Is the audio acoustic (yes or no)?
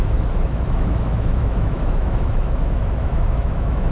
no